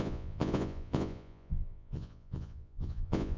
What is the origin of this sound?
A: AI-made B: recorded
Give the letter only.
A